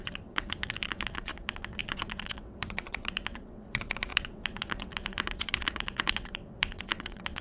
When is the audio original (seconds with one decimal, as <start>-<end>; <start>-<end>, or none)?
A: none